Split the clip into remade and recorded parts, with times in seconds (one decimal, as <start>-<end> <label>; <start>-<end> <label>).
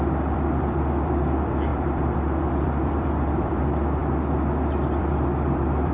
0.0-4.0 remade; 4.0-5.0 recorded; 5.0-5.9 remade